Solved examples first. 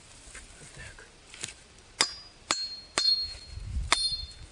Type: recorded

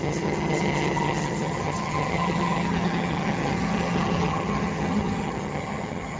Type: remade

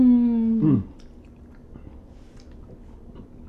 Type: recorded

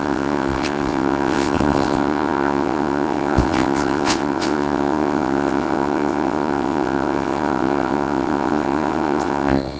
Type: remade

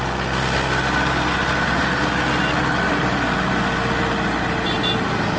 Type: recorded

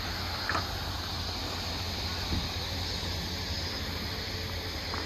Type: recorded